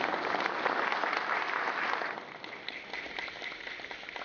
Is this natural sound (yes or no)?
yes